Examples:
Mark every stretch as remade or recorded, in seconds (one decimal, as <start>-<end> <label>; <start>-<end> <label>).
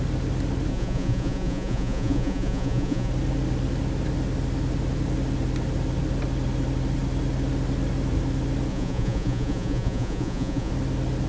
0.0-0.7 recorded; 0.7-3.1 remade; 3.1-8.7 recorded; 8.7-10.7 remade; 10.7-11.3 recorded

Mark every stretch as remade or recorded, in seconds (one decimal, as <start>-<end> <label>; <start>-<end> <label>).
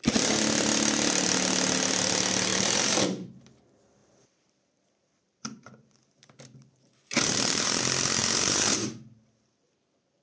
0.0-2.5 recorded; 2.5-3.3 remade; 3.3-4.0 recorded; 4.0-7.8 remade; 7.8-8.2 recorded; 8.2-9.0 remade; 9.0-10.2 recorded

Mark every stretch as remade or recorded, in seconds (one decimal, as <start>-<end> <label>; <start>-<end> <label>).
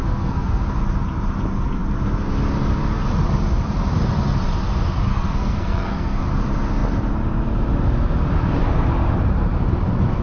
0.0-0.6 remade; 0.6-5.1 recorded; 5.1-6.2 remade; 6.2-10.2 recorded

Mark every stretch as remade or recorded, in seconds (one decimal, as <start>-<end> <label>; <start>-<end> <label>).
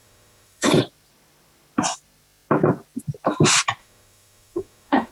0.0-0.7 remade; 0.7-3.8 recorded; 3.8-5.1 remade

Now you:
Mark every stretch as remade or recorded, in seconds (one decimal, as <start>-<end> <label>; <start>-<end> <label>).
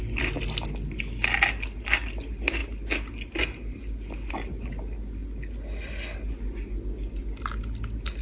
0.0-8.2 recorded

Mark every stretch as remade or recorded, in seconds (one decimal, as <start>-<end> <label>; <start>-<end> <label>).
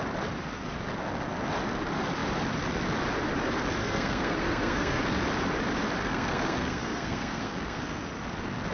0.0-3.8 recorded; 3.8-5.0 remade; 5.0-6.0 recorded; 6.0-7.8 remade; 7.8-8.7 recorded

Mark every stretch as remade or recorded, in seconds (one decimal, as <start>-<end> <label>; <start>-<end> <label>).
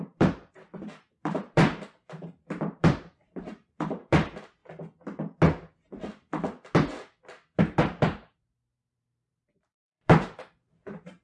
0.0-4.6 remade; 4.6-7.6 recorded; 7.6-11.2 remade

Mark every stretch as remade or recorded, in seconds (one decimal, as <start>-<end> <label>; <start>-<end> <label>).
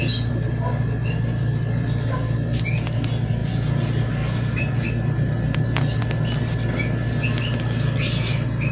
0.0-8.7 recorded